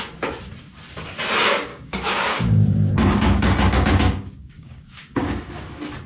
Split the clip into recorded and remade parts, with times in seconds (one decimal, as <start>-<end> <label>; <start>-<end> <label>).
0.0-1.7 recorded; 1.7-5.4 remade; 5.4-6.1 recorded